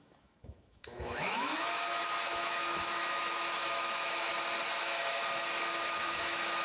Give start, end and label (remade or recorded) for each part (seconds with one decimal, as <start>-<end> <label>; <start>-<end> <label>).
0.0-4.3 remade; 4.3-4.8 recorded; 4.8-5.2 remade; 5.2-5.8 recorded; 5.8-6.6 remade